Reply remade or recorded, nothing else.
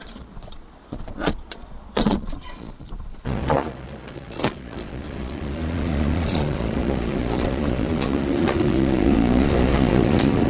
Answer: remade